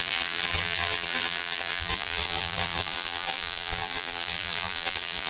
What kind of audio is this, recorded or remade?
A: remade